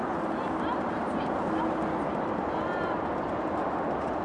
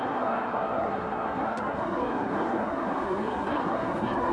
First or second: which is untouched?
first